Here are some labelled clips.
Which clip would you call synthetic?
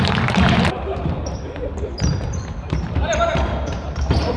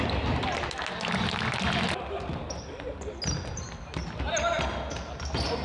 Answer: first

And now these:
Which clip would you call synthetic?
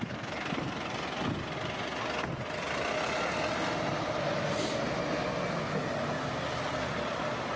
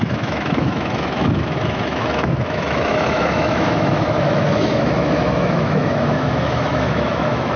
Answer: second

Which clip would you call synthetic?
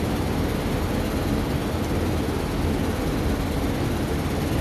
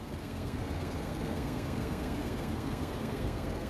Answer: second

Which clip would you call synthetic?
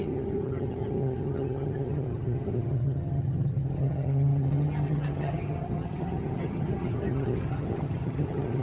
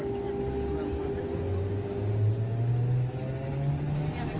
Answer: first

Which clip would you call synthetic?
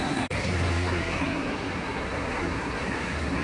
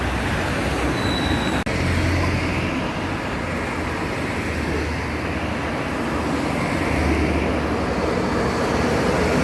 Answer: first